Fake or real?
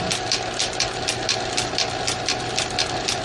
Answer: real